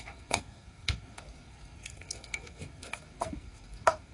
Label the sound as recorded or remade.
remade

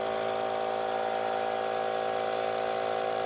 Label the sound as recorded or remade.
recorded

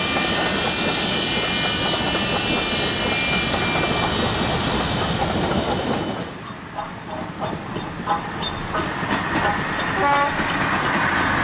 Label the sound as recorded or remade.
recorded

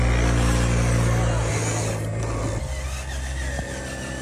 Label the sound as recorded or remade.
recorded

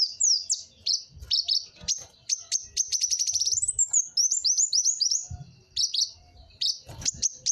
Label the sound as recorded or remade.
recorded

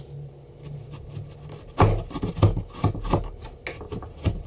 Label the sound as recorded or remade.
recorded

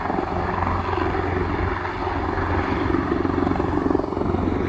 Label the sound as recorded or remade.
recorded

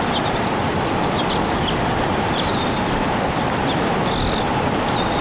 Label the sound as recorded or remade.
recorded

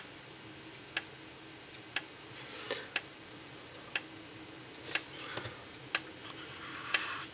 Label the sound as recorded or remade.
recorded